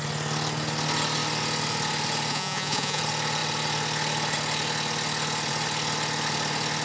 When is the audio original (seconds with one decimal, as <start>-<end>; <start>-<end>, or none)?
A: 0.0-2.3; 3.0-6.8